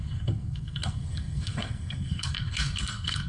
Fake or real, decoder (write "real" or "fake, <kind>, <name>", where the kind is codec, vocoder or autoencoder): fake, codec, SNAC